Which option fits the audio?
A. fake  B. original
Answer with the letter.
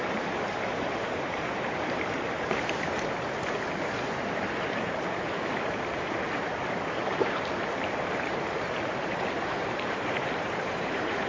A